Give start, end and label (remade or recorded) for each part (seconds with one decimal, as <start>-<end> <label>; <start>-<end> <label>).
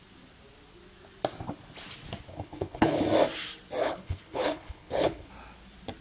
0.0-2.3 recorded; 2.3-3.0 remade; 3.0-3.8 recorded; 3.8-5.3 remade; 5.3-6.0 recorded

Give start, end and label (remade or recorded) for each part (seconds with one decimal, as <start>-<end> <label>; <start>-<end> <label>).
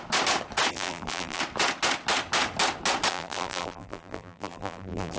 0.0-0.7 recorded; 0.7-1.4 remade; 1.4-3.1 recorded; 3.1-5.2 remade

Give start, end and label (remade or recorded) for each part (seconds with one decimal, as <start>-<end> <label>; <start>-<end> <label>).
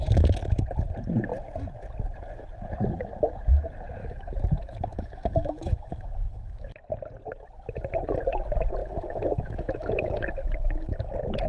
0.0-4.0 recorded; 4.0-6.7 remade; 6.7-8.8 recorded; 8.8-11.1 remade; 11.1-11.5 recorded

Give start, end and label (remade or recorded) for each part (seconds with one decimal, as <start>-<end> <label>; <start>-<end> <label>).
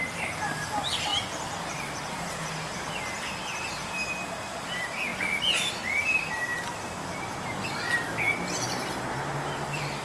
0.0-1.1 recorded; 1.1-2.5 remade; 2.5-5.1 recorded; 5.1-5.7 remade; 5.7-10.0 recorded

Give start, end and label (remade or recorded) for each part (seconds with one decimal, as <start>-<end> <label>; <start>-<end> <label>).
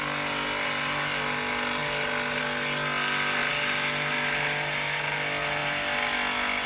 0.0-6.7 recorded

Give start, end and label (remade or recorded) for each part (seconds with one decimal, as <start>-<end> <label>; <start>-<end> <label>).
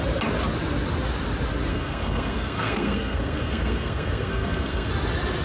0.0-1.7 recorded; 1.7-4.9 remade; 4.9-5.4 recorded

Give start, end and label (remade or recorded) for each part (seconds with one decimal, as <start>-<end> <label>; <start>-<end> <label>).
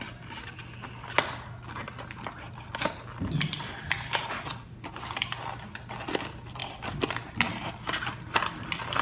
0.0-9.0 recorded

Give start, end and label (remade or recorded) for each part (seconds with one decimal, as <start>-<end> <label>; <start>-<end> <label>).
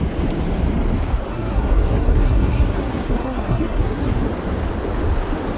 0.0-1.3 recorded; 1.3-4.1 remade; 4.1-5.6 recorded